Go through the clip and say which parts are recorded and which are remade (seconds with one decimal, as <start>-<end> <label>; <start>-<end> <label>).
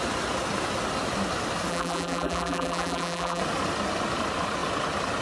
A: 0.0-1.7 recorded; 1.7-3.4 remade; 3.4-5.2 recorded